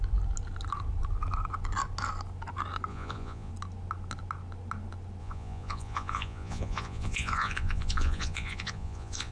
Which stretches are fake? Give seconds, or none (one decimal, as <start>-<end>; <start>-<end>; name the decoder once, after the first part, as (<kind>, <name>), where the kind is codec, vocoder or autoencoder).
2.9-3.5 (vocoder, Vocos); 5.2-9.3